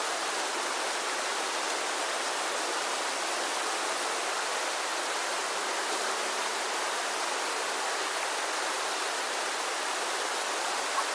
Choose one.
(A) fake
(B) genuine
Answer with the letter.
B